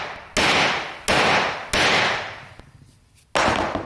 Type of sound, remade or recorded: recorded